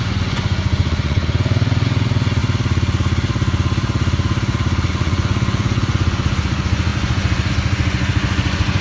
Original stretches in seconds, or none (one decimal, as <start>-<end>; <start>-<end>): 2.4-4.9